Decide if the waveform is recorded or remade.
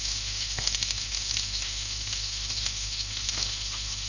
remade